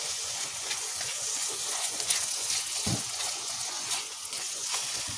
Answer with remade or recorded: remade